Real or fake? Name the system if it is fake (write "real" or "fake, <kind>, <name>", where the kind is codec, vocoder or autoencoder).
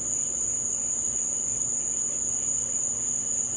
real